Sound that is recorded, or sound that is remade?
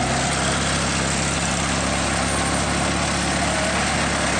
recorded